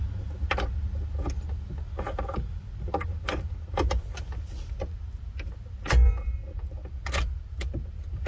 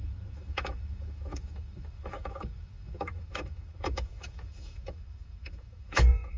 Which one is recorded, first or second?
first